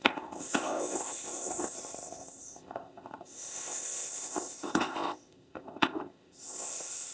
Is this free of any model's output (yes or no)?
no